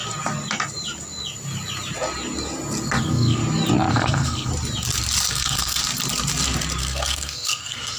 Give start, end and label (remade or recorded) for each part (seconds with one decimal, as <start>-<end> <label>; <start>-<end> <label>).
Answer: 0.0-3.0 recorded; 3.0-3.4 remade; 3.4-3.9 recorded; 3.9-4.5 remade; 4.5-5.3 recorded; 5.3-5.8 remade; 5.8-6.8 recorded; 6.8-8.0 remade